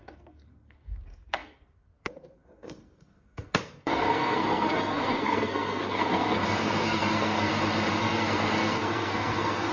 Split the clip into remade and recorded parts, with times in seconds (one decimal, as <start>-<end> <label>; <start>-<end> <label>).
0.0-7.5 remade; 7.5-8.0 recorded; 8.0-9.7 remade